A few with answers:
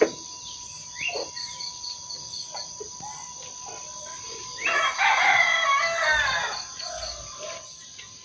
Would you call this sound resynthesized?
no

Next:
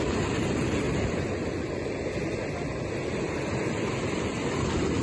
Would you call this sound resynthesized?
yes